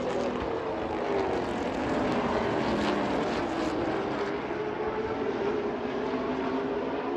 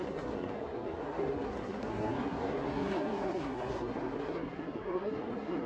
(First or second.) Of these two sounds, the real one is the first